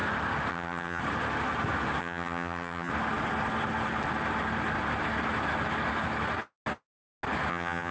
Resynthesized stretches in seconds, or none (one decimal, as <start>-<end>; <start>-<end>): 0.5-1.0; 2.0-2.9; 7.5-7.9